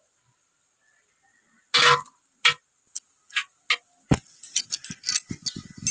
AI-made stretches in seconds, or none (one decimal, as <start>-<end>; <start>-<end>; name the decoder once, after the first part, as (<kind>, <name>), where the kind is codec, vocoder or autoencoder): none